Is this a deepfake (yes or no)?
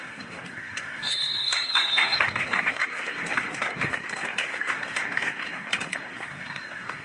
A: yes